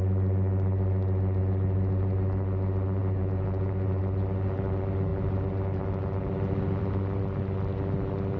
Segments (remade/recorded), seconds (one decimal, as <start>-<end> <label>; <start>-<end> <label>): 0.0-3.0 recorded; 3.0-4.0 remade; 4.0-8.4 recorded